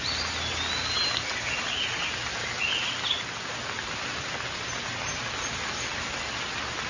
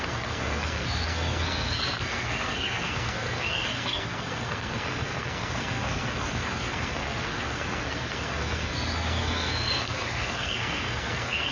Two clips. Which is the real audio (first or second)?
first